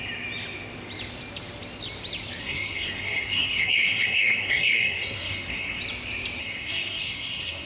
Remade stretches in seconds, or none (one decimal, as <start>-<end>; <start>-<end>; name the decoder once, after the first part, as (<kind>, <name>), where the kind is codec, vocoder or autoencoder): 2.4-5.8 (codec, SNAC); 6.4-7.7